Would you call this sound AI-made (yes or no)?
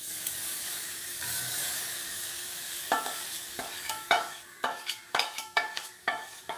yes